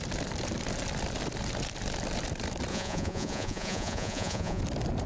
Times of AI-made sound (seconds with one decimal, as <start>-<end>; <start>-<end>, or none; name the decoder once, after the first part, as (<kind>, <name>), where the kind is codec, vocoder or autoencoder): 2.7-4.6 (vocoder, Vocos)